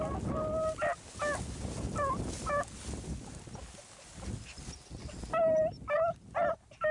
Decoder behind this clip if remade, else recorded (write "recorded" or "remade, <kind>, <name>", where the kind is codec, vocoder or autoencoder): recorded